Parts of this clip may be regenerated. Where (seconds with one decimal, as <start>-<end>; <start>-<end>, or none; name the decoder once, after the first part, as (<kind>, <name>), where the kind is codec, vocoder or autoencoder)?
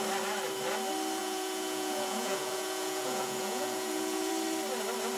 1.2-4.3 (vocoder, Vocos)